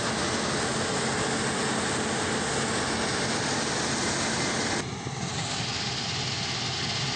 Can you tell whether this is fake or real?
real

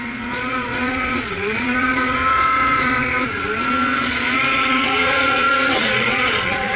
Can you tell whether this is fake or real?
fake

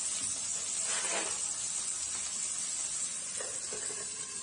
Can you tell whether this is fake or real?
real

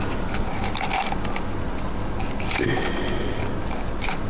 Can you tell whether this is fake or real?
real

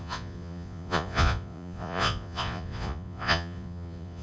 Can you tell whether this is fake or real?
fake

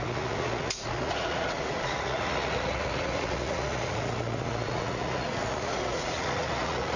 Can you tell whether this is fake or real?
fake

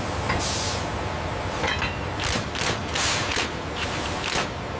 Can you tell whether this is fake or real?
real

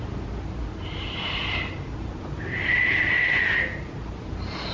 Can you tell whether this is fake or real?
real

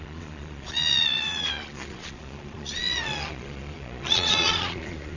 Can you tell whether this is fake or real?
fake